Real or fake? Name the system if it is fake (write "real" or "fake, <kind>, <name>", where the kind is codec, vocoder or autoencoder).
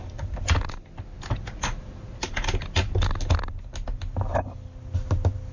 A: real